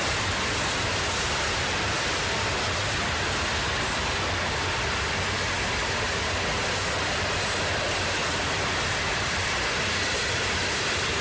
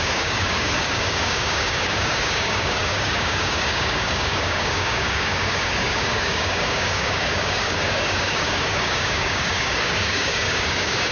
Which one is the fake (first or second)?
second